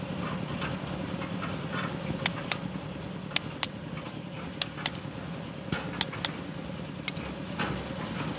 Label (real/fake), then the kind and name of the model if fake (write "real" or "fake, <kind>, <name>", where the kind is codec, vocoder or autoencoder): real